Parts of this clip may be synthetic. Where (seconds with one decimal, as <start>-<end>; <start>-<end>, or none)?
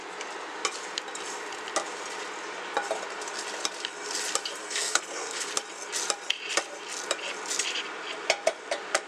4.6-5.5